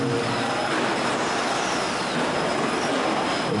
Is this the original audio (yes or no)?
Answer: yes